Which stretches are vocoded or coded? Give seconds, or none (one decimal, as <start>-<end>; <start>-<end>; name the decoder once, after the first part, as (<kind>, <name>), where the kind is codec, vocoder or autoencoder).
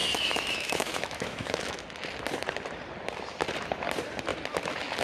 0.0-1.8 (autoencoder, DAC-VAE)